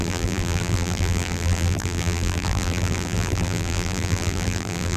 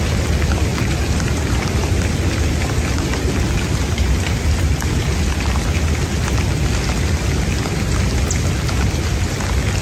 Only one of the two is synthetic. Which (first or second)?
first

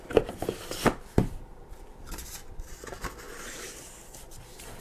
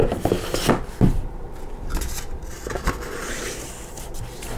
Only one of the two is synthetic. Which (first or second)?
first